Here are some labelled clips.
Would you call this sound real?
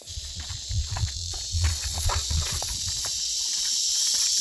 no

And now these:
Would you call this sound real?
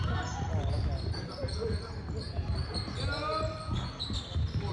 yes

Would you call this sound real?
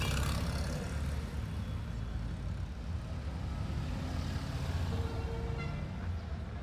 yes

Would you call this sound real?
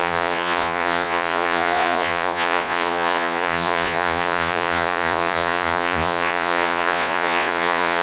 no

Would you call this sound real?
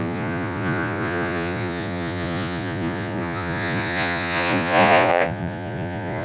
no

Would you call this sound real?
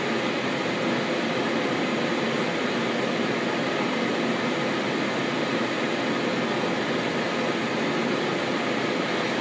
yes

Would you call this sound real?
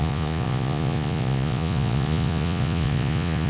no